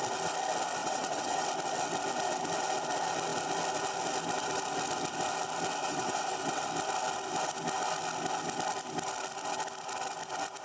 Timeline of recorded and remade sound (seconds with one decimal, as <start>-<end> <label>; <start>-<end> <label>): 0.0-0.8 recorded; 0.8-1.4 remade; 1.4-5.8 recorded; 5.8-6.6 remade; 6.6-10.6 recorded